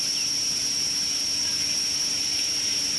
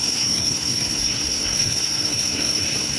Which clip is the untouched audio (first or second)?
first